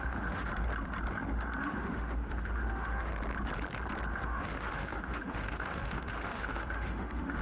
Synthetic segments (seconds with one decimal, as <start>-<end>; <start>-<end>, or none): 0.0-0.5; 1.6-3.1; 4.1-7.4